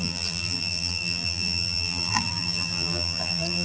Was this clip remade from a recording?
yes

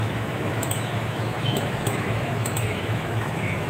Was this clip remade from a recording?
yes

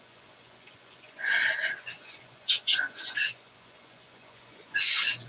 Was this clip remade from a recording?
yes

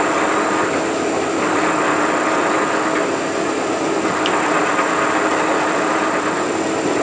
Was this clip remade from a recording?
no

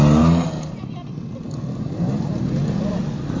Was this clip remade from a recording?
no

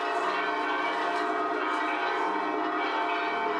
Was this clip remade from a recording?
no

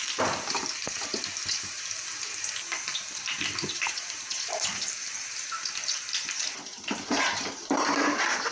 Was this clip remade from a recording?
yes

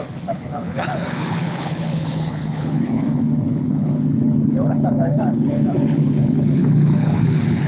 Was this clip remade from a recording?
yes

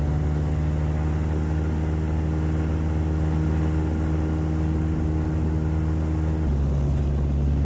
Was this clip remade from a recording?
no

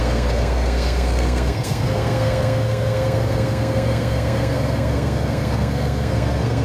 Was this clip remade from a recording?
yes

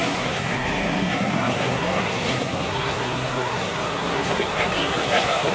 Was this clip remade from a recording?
yes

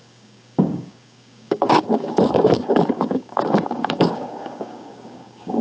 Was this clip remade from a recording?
yes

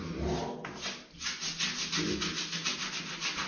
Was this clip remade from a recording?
no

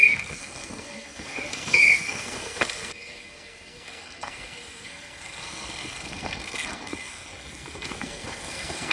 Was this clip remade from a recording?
yes